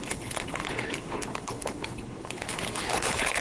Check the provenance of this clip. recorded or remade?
remade